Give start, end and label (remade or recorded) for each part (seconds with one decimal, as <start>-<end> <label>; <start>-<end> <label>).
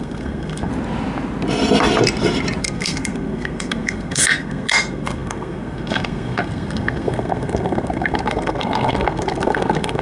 0.0-0.7 remade; 0.7-2.6 recorded; 2.6-10.0 remade